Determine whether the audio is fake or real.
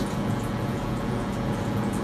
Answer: fake